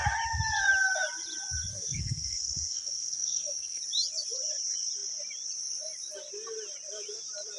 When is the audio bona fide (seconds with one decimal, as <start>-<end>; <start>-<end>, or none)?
0.0-1.7; 3.8-7.6